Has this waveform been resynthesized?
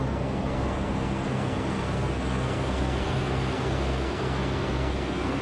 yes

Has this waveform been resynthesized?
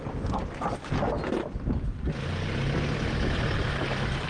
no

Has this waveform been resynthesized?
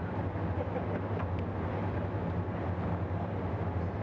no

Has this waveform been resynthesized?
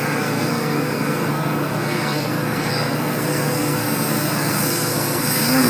yes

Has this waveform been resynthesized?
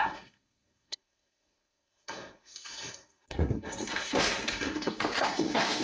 yes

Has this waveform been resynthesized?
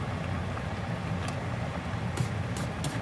no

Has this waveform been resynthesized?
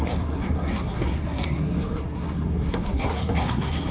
yes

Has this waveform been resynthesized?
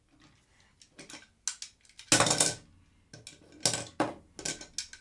no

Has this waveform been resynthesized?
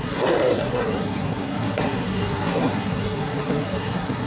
yes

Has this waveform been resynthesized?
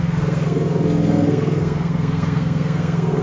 yes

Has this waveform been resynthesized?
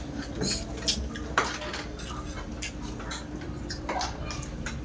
no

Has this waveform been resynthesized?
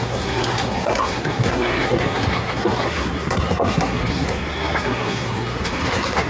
yes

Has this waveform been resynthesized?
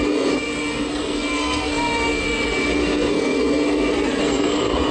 yes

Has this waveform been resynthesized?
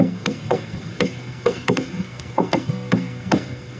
yes